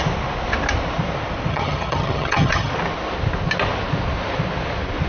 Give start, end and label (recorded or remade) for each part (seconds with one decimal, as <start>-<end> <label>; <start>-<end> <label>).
0.0-1.5 recorded; 1.5-2.7 remade; 2.7-5.1 recorded